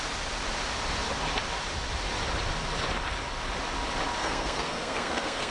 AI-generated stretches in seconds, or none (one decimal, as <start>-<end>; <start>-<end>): 4.2-5.5